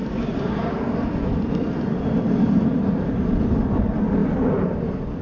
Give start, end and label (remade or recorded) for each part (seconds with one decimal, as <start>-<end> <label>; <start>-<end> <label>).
0.0-0.6 remade; 0.6-5.2 recorded